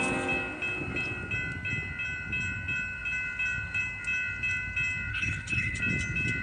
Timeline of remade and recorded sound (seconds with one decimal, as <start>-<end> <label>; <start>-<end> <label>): 0.0-5.1 recorded; 5.1-5.8 remade; 5.8-6.4 recorded